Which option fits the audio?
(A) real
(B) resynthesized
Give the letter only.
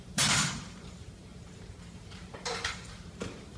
B